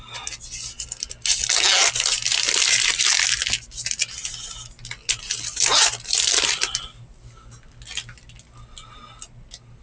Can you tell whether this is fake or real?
real